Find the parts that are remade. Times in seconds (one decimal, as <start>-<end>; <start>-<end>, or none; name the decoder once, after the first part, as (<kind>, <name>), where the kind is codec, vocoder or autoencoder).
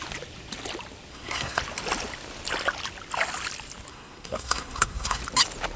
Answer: 1.1-1.6 (codec, SNAC); 3.9-5.2